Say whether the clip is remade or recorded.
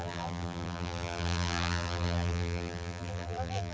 remade